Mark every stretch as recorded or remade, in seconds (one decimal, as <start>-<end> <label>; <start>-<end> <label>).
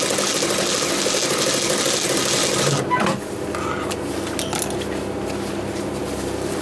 0.0-6.6 recorded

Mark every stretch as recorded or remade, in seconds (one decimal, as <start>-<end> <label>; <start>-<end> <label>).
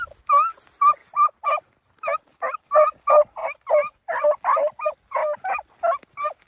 0.0-6.5 recorded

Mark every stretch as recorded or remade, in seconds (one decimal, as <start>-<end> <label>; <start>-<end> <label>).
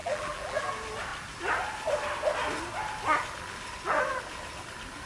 0.0-0.7 remade; 0.7-5.1 recorded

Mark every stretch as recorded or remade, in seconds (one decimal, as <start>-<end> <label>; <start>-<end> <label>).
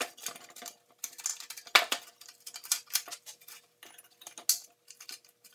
0.0-5.5 recorded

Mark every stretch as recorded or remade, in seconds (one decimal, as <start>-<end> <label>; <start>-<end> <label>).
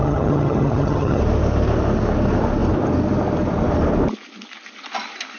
0.0-1.2 remade; 1.2-5.4 recorded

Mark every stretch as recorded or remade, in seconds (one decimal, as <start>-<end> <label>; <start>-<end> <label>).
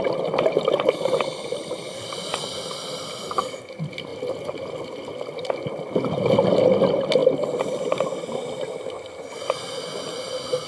0.0-10.7 recorded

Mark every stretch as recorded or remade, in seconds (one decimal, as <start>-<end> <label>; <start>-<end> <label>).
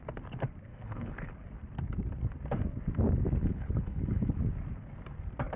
0.0-0.7 recorded; 0.7-1.3 remade; 1.3-3.4 recorded; 3.4-4.4 remade; 4.4-5.6 recorded